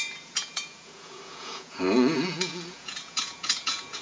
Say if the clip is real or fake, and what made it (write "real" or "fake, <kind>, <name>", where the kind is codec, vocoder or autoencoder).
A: fake, vocoder, Vocos